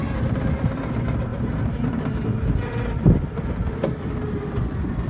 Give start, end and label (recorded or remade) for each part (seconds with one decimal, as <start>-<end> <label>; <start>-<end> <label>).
0.0-5.1 recorded